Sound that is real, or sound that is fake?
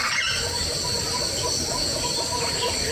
real